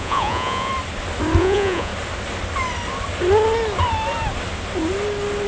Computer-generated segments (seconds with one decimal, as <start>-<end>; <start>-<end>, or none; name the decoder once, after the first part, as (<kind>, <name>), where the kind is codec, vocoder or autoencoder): 0.0-0.7 (vocoder, Vocos); 1.4-1.9